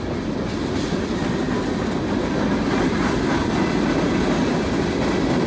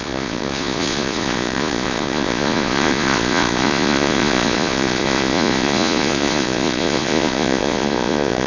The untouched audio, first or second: first